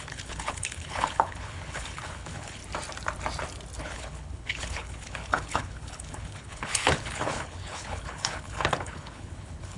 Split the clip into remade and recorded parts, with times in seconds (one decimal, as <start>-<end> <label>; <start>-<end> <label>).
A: 0.0-2.6 remade; 2.6-3.8 recorded; 3.8-9.8 remade